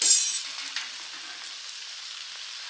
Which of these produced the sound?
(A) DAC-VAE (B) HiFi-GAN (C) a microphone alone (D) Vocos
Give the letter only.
C